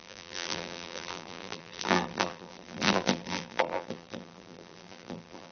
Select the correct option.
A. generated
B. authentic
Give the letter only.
A